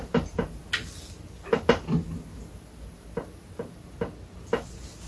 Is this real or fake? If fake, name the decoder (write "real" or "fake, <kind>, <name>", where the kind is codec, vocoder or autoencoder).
real